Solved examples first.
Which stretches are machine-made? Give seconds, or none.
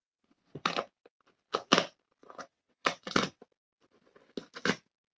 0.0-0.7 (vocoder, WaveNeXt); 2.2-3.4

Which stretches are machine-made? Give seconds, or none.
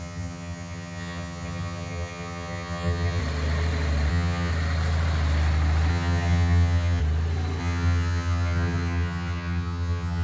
0.0-3.2 (vocoder, HiFi-GAN); 4.1-4.5; 5.9-7.0; 7.6-10.2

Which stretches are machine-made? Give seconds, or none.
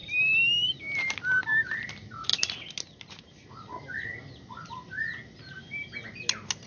none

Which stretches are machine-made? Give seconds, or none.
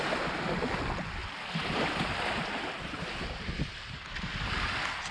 1.2-4.3 (vocoder, BigVGAN v2)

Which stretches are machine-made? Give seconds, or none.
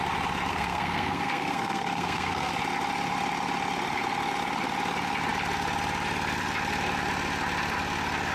0.5-2.5 (codec, SNAC)